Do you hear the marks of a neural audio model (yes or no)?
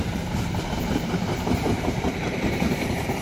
yes